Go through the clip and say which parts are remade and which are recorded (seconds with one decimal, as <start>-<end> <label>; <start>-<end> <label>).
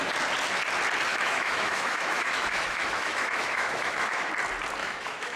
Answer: 0.0-1.1 recorded; 1.1-4.3 remade; 4.3-4.8 recorded; 4.8-5.4 remade